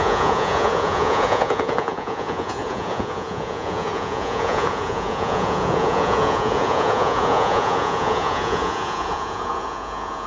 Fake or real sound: fake